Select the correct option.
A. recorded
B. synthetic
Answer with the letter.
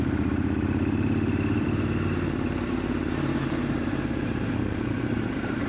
B